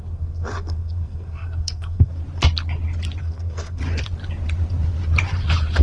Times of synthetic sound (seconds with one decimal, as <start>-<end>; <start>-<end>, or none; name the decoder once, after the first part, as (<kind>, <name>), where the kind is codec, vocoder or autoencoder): 0.0-2.1 (codec, SNAC); 3.2-3.8